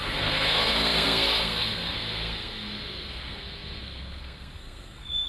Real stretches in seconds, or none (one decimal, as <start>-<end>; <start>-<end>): none